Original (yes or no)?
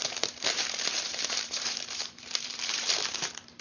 no